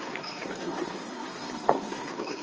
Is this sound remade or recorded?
remade